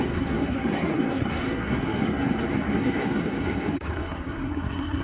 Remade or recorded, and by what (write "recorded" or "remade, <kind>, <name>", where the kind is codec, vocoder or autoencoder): remade, codec, SNAC